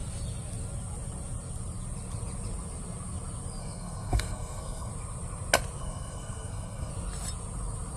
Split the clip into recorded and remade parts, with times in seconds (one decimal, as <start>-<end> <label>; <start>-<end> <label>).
0.0-3.6 recorded; 3.6-4.9 remade; 4.9-5.8 recorded; 5.8-6.9 remade; 6.9-8.0 recorded